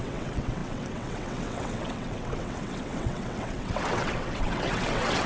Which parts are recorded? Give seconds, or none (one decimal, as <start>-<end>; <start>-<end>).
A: none